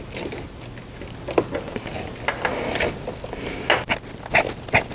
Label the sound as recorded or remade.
recorded